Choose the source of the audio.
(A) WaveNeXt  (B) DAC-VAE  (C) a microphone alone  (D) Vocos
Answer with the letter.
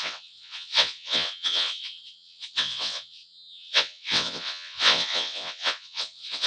A